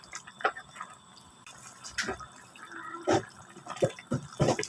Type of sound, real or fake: real